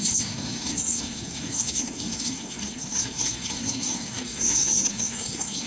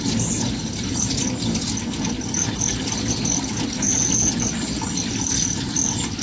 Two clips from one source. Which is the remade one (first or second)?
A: first